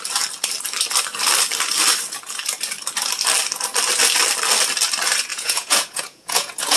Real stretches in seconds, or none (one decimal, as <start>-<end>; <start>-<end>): 0.0-5.3